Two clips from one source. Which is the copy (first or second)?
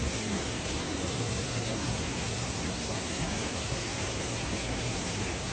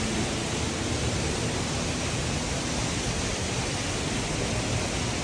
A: first